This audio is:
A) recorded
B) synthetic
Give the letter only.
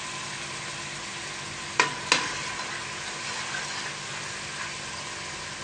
A